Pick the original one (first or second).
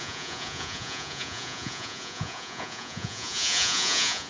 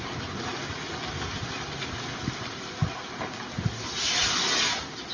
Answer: second